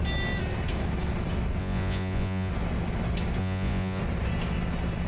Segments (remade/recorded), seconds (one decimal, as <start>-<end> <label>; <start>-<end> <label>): 0.0-1.6 recorded; 1.6-2.5 remade; 2.5-3.4 recorded; 3.4-4.0 remade; 4.0-5.1 recorded